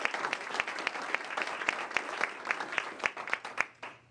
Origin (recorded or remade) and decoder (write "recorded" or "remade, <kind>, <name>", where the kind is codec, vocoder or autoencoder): recorded